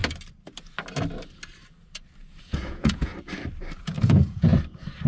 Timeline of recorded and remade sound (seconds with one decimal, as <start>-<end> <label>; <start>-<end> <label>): 0.0-2.4 recorded; 2.4-3.1 remade; 3.1-3.8 recorded; 3.8-4.5 remade; 4.5-5.1 recorded